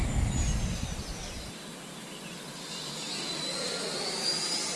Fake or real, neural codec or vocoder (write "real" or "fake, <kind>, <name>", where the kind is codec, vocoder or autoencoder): real